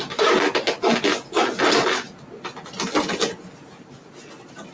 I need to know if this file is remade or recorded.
recorded